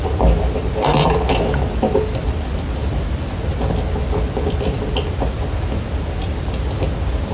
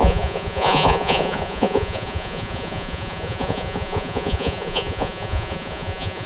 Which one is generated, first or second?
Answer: second